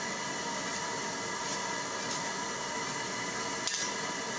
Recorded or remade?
recorded